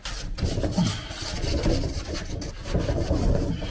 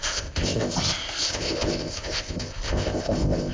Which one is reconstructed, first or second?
second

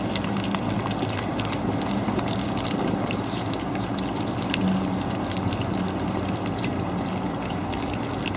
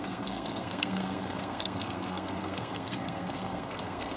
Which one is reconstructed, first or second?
second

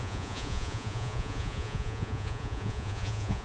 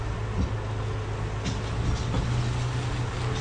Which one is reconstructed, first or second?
first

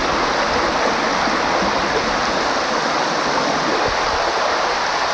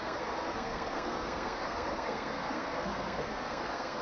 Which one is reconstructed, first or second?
second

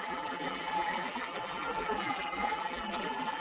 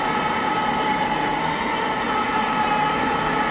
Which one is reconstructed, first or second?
first